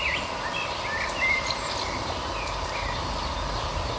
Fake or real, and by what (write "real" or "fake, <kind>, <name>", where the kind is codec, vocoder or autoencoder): real